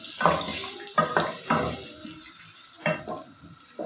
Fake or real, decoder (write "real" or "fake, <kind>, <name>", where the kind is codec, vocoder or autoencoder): real